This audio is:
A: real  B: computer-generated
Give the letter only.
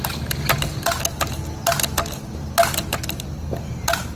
A